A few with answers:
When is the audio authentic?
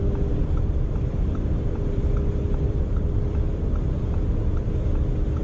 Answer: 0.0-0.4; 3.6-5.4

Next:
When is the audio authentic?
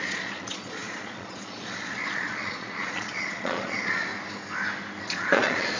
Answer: 4.1-5.0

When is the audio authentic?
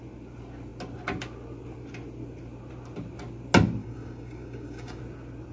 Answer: 0.0-3.8; 5.0-5.5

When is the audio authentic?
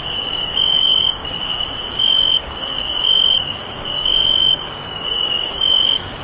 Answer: none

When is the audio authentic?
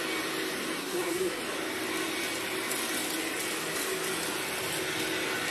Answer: 0.0-0.8; 1.4-5.5